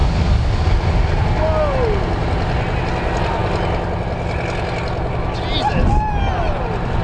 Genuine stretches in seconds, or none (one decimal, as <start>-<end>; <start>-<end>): 0.6-7.0